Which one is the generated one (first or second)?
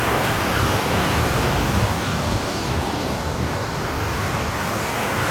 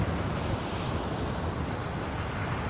first